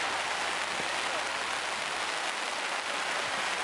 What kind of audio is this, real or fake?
real